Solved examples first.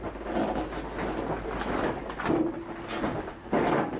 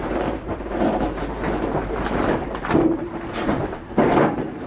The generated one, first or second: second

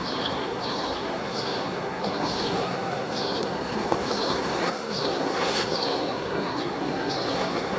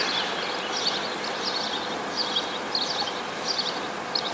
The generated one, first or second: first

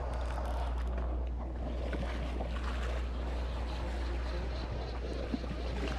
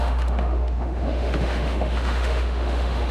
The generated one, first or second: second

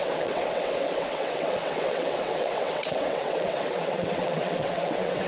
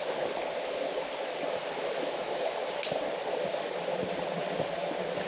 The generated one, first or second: first